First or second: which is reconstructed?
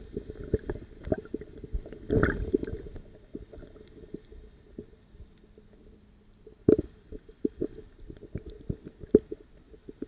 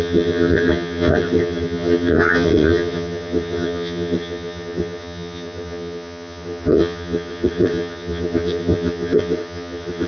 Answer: second